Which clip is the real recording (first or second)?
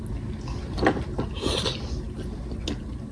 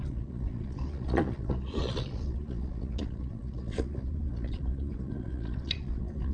first